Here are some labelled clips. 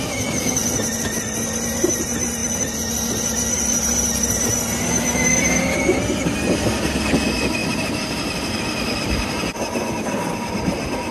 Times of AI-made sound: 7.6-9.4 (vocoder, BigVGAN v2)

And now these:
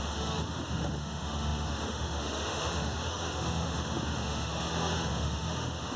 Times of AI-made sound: 0.0-6.0 (autoencoder, DAC-VAE)

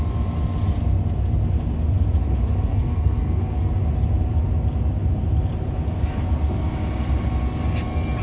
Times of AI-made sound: 2.7-3.7 (codec, SNAC)

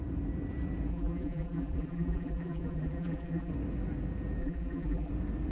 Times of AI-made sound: 0.9-3.5 (vocoder, BigVGAN v2); 4.4-5.1

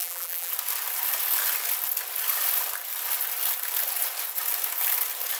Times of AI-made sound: 0.0-0.5 (vocoder, BigVGAN v2)

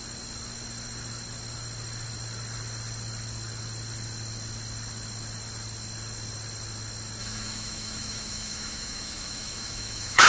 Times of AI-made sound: 7.2-10.3 (autoencoder, DAC-VAE)

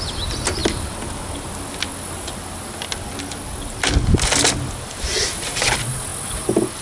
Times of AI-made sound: none